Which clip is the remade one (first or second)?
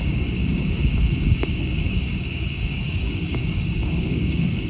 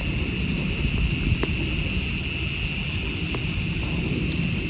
first